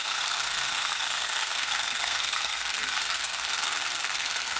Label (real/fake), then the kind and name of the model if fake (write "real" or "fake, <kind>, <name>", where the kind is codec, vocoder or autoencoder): fake, codec, SNAC